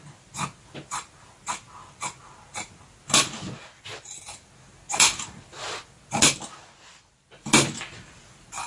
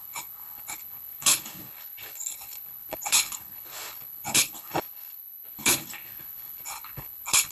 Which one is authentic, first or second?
first